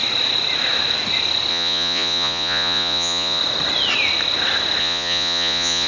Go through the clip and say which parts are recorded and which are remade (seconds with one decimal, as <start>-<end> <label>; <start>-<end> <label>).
0.0-1.5 recorded; 1.5-3.4 remade; 3.4-4.8 recorded; 4.8-5.9 remade